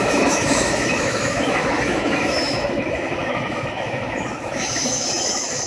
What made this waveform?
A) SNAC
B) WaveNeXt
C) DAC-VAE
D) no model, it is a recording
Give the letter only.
C